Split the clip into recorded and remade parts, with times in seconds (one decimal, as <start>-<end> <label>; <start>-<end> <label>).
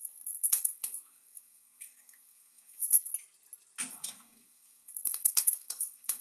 0.0-3.1 remade; 3.1-3.9 recorded; 3.9-6.2 remade